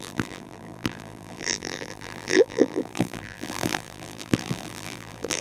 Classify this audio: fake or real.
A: fake